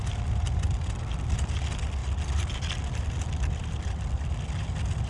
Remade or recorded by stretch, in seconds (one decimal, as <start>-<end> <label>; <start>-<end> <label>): 0.0-5.1 recorded